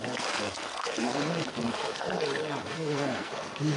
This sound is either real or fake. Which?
fake